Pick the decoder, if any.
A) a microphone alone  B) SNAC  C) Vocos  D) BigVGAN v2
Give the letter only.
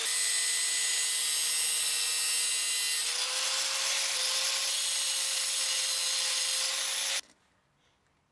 A